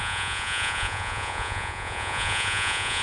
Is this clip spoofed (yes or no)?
yes